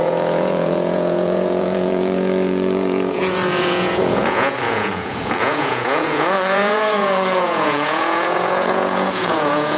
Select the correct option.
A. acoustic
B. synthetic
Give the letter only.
B